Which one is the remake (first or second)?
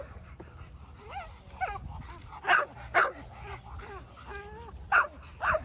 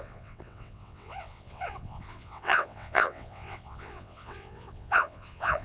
second